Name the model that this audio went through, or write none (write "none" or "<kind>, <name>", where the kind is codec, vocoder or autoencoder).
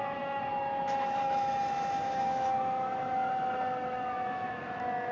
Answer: autoencoder, DAC-VAE